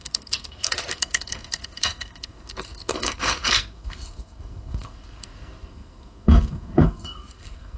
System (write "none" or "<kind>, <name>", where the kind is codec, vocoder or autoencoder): codec, SNAC